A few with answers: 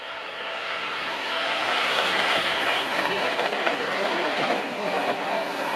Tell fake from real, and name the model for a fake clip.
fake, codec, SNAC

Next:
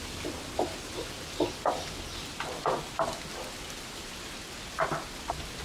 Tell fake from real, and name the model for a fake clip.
real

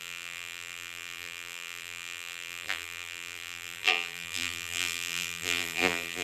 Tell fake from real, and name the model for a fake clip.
fake, vocoder, BigVGAN v2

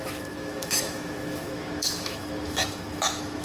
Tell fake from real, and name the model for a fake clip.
fake, autoencoder, DAC-VAE